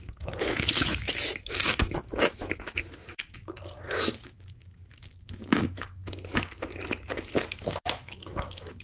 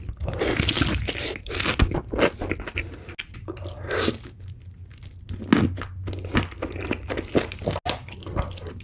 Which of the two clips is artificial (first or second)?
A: first